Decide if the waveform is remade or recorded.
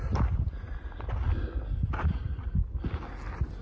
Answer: recorded